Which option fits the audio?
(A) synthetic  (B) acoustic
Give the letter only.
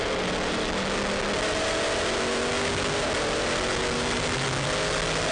B